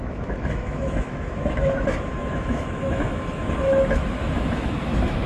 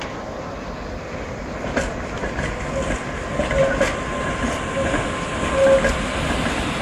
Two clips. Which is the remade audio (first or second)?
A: first